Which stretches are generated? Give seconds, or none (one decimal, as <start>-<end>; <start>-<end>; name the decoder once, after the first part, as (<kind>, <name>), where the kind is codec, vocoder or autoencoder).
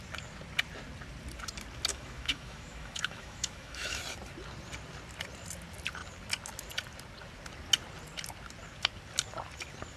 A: 1.9-4.0 (autoencoder, DAC-VAE)